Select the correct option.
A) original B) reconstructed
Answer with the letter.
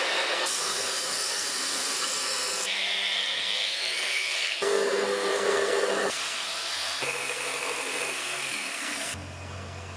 B